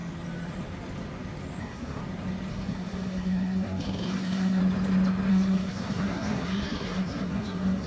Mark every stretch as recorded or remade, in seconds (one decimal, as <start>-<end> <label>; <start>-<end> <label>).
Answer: 0.0-1.6 recorded; 1.6-2.0 remade; 2.0-2.5 recorded; 2.5-4.6 remade; 4.6-5.3 recorded; 5.3-7.9 remade